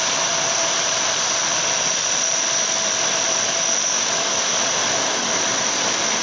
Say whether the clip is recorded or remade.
remade